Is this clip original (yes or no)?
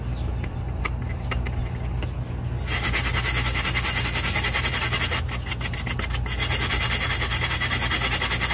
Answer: yes